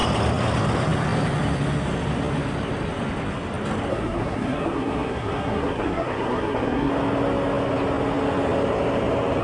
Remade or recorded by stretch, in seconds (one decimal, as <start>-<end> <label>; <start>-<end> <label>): 0.0-3.9 recorded; 3.9-6.9 remade; 6.9-9.4 recorded